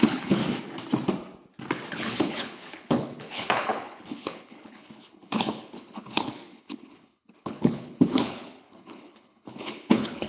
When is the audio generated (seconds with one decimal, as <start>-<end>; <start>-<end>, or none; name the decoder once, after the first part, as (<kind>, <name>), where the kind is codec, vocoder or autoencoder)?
0.0-0.4 (codec, HILCodec); 1.9-10.3